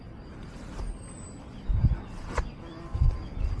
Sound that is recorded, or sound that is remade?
recorded